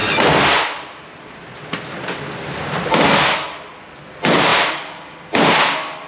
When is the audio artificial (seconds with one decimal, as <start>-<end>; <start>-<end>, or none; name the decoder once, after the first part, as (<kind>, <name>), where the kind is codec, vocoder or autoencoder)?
none